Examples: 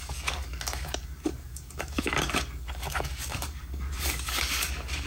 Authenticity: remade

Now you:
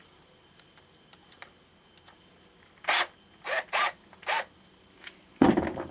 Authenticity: recorded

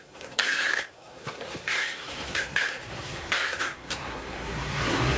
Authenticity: remade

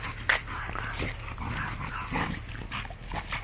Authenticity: recorded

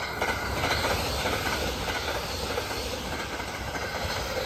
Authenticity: recorded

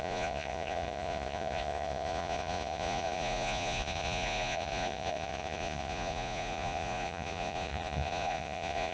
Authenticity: remade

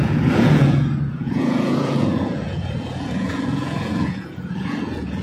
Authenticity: remade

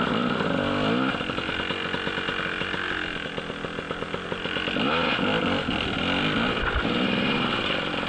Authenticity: recorded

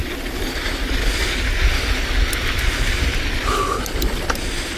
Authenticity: recorded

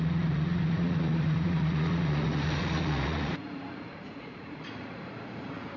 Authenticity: remade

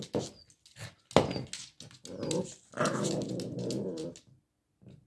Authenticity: recorded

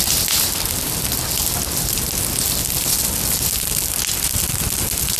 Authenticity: recorded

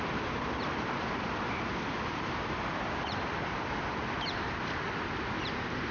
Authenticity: remade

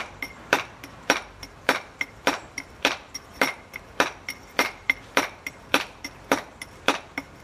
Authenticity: remade